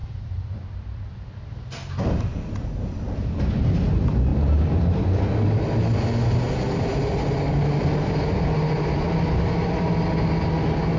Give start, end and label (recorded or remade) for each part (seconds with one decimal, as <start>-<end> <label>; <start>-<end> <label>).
0.0-1.1 remade; 1.1-4.3 recorded; 4.3-4.8 remade; 4.8-11.0 recorded